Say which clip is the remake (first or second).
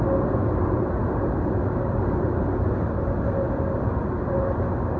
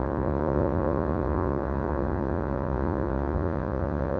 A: second